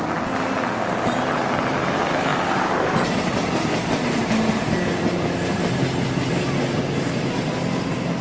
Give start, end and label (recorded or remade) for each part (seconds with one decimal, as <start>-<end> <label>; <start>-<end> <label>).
0.0-2.3 recorded; 2.3-7.2 remade; 7.2-8.2 recorded